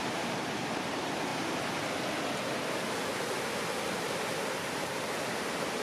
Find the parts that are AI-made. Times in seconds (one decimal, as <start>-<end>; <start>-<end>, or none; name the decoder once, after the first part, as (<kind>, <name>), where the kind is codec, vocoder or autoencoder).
0.0-1.3 (vocoder, BigVGAN v2); 4.7-5.8